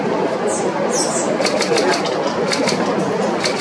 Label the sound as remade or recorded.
recorded